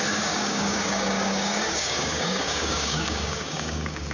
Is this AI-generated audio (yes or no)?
yes